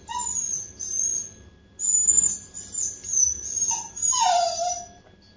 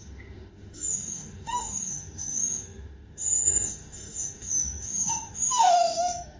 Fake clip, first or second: second